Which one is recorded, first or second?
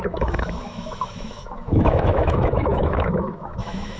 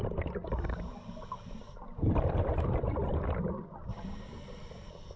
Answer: second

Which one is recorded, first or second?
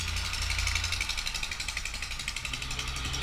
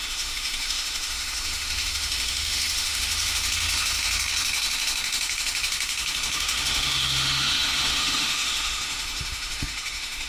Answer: first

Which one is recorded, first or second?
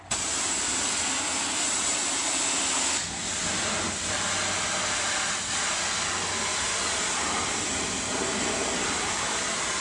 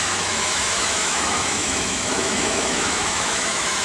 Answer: first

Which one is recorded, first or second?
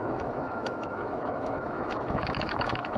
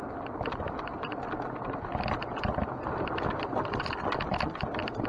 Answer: second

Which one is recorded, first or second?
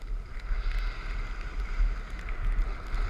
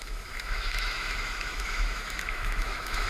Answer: first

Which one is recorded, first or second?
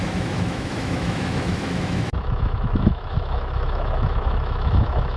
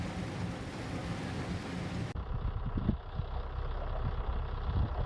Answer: second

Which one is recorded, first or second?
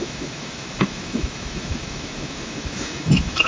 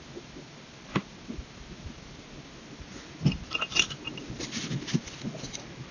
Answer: second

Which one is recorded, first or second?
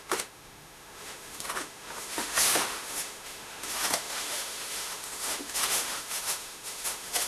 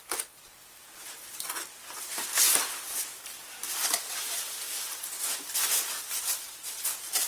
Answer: second